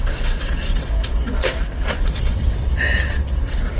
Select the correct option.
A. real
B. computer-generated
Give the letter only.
B